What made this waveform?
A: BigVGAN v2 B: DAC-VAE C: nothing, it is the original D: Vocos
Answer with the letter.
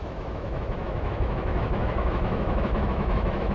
B